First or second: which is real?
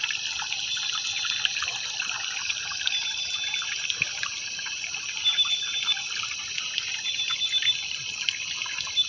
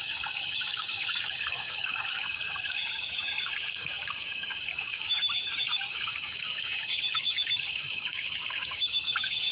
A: first